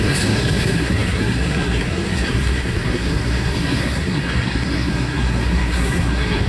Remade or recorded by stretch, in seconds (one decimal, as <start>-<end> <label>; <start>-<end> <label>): 0.0-6.5 remade